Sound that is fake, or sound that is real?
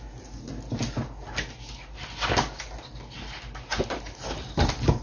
real